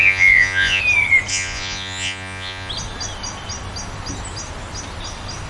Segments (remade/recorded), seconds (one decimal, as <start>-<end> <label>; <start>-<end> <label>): 0.0-0.8 remade; 0.8-1.3 recorded; 1.3-2.7 remade; 2.7-5.5 recorded